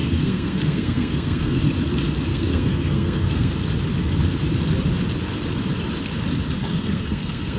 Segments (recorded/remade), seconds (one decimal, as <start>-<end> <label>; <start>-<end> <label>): 0.0-1.6 remade; 1.6-2.3 recorded; 2.3-3.5 remade; 3.5-6.6 recorded; 6.6-7.6 remade